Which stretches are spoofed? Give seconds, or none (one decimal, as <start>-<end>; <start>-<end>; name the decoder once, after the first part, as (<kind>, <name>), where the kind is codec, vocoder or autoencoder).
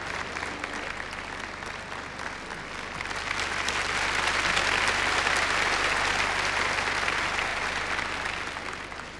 none